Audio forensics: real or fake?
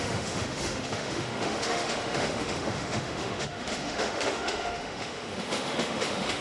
fake